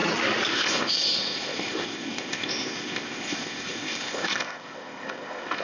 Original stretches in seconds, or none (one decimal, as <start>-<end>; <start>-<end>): 0.0-0.5